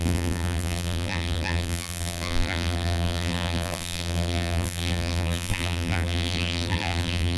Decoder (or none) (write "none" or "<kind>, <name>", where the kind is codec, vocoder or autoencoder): vocoder, BigVGAN v2